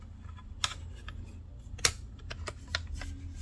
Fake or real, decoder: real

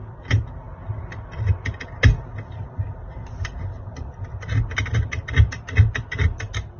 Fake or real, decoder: real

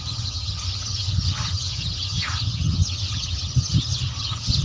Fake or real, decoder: fake, vocoder, HiFi-GAN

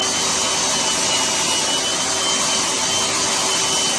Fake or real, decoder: real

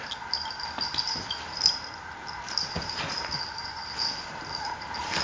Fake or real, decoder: real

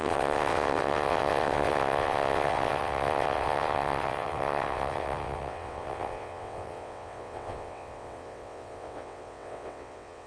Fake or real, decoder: fake, vocoder, WaveNeXt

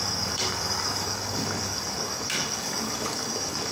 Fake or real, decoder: fake, codec, DAC